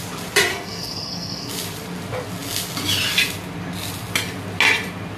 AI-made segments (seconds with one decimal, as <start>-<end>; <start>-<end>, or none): 0.5-1.5